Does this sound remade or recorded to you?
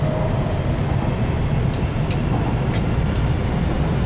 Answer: recorded